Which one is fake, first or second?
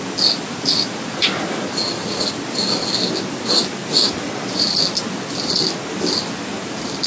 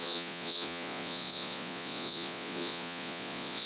second